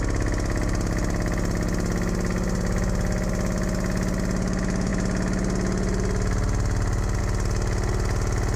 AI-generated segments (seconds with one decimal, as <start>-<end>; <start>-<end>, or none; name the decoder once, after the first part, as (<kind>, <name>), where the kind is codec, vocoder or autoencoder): none